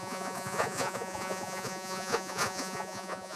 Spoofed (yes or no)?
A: yes